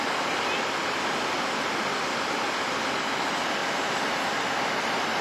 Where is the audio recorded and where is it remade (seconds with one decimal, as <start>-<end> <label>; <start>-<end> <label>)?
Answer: 0.0-5.2 recorded